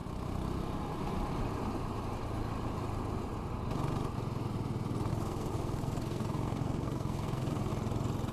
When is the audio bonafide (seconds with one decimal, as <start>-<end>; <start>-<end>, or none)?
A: 0.0-5.1; 7.7-8.3

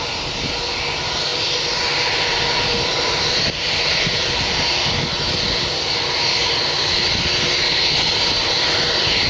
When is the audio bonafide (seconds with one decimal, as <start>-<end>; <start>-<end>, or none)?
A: 0.0-9.3

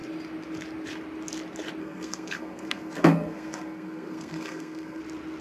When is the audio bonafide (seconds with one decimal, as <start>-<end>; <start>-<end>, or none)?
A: 0.0-1.8; 5.0-5.4

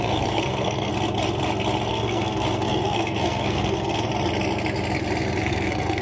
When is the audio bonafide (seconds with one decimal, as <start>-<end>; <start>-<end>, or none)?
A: 0.9-1.9; 4.1-5.4

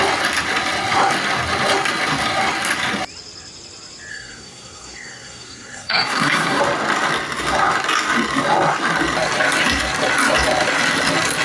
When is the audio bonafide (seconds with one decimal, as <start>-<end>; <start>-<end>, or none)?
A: 0.0-4.1; 6.6-11.4

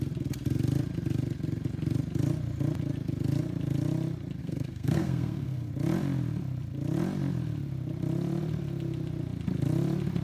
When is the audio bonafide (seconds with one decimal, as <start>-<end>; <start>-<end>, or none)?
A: 0.0-4.4; 5.7-10.2

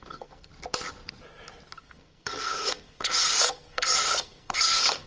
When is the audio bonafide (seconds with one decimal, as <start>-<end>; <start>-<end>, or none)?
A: 0.5-1.8